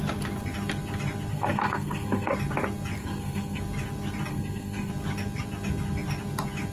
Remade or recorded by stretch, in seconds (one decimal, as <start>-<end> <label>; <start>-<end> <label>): 0.0-1.3 recorded; 1.3-2.3 remade; 2.3-3.0 recorded; 3.0-3.6 remade; 3.6-4.3 recorded; 4.3-4.9 remade; 4.9-6.7 recorded